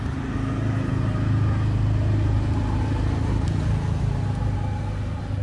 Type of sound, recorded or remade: recorded